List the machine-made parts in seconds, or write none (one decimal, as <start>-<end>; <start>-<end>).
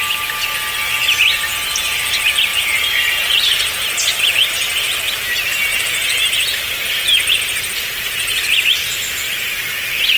2.5-4.5; 5.7-7.2